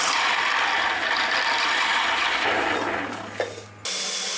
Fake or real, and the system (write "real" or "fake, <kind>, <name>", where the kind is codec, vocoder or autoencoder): real